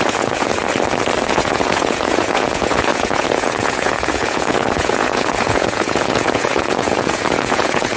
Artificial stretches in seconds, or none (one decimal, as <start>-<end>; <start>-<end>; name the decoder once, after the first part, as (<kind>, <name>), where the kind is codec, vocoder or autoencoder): 0.0-0.6 (vocoder, Vocos); 1.3-8.0